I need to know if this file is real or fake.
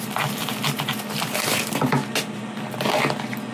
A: real